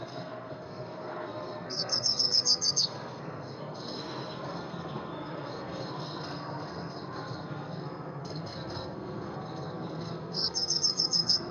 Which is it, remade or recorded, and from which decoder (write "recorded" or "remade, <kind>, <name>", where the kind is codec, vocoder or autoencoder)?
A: remade, codec, SNAC